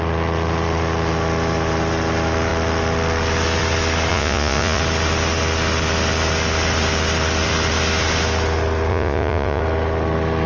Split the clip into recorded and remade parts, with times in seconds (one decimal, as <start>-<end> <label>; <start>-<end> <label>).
0.0-4.1 recorded; 4.1-4.8 remade; 4.8-8.9 recorded; 8.9-9.6 remade; 9.6-10.5 recorded